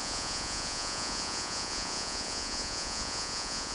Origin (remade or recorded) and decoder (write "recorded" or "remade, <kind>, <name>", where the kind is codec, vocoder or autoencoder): remade, vocoder, Vocos